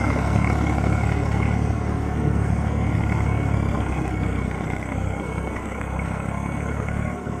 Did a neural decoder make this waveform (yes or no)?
yes